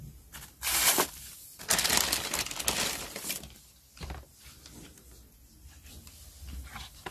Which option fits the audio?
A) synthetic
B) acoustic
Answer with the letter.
B